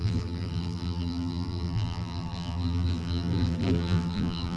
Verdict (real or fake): fake